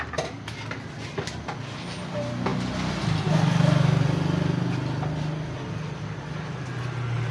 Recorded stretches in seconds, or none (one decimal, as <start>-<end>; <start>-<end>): 0.0-7.3